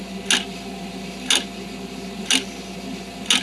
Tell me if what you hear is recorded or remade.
recorded